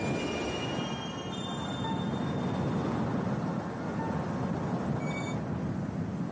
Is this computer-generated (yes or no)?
no